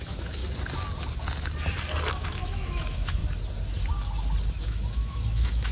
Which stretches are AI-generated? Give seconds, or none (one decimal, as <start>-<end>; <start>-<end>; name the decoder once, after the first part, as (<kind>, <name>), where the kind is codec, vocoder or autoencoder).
0.0-0.4 (autoencoder, DAC-VAE); 2.1-3.2; 4.6-5.7